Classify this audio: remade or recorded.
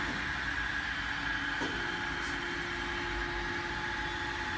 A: recorded